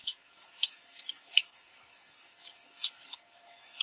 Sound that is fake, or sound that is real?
fake